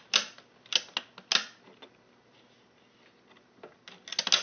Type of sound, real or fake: real